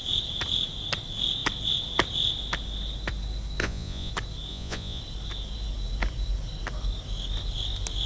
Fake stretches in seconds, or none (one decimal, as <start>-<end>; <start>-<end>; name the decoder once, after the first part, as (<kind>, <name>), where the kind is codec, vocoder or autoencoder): 3.6-4.1 (vocoder, Vocos); 4.5-5.0